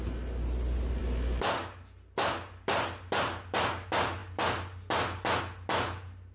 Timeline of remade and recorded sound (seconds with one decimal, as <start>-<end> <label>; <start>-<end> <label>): 0.0-6.3 recorded

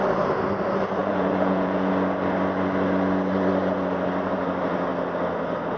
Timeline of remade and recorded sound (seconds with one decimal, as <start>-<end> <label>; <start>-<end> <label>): 0.0-1.0 recorded; 1.0-1.9 remade; 1.9-5.8 recorded

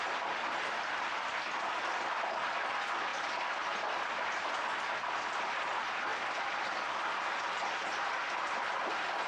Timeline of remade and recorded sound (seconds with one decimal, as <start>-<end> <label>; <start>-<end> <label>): 0.0-9.3 recorded

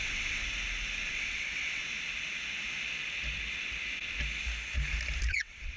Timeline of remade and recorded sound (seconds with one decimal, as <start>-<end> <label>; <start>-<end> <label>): 0.0-0.4 remade; 0.4-1.1 recorded; 1.1-1.8 remade; 1.8-5.3 recorded; 5.3-5.8 remade

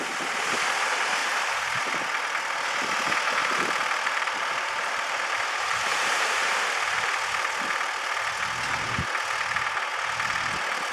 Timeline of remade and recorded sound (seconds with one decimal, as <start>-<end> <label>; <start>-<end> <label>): 0.0-1.2 recorded; 1.2-2.0 remade; 2.0-3.4 recorded; 3.4-6.5 remade; 6.5-10.9 recorded

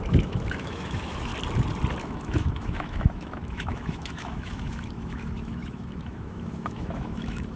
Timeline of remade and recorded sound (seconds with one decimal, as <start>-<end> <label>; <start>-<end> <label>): 0.0-1.3 remade; 1.3-2.0 recorded; 2.0-7.6 remade